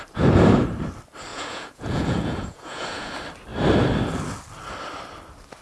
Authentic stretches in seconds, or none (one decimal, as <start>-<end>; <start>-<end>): 0.0-1.3; 3.1-5.6